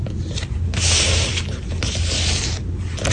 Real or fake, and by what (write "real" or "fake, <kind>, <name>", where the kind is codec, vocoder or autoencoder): real